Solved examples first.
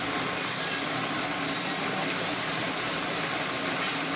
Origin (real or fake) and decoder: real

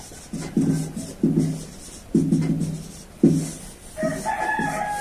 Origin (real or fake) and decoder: real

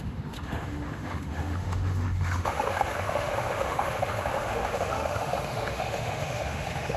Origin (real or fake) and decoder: fake, autoencoder, DAC-VAE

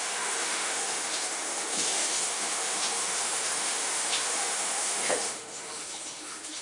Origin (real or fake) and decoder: fake, autoencoder, DAC-VAE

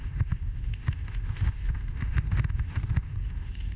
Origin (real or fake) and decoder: fake, autoencoder, DAC-VAE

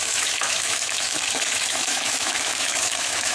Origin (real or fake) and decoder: fake, autoencoder, DAC-VAE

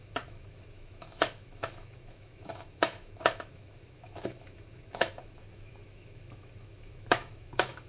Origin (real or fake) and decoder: fake, autoencoder, DAC-VAE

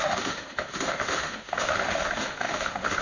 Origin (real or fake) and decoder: fake, autoencoder, DAC-VAE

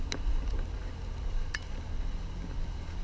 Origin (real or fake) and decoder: real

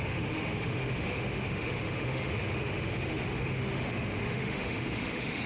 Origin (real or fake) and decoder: fake, autoencoder, DAC-VAE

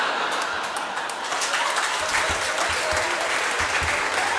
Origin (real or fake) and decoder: real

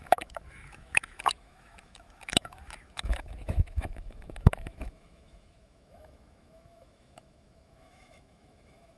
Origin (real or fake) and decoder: fake, autoencoder, DAC-VAE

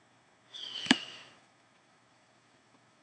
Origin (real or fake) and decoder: fake, autoencoder, DAC-VAE